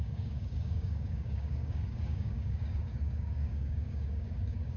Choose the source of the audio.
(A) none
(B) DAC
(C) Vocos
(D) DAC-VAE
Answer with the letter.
B